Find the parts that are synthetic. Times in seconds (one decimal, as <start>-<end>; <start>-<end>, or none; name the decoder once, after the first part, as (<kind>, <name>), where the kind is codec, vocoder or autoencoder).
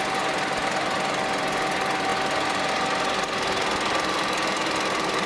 none